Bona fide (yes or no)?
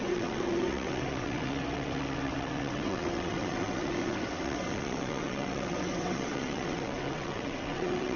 no